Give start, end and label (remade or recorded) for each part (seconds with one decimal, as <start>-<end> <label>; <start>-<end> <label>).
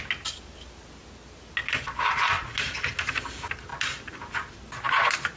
0.0-1.6 recorded; 1.6-2.1 remade; 2.1-5.4 recorded